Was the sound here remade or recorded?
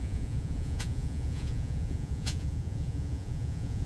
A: remade